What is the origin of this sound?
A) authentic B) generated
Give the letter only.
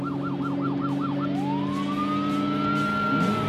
A